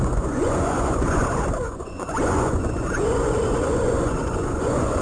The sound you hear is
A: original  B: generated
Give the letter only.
B